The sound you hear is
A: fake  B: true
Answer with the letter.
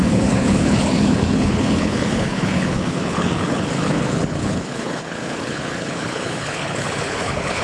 A